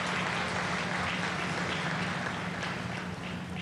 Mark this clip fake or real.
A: real